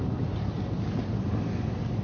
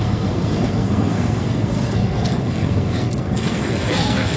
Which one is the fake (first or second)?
second